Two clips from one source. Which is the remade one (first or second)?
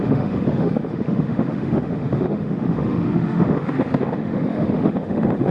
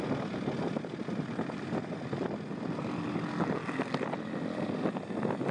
first